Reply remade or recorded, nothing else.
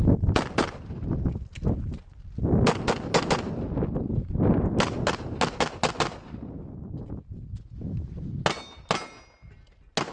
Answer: recorded